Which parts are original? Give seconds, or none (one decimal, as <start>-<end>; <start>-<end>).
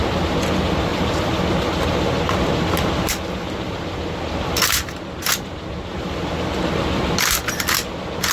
0.0-0.9; 5.0-5.9; 6.7-8.3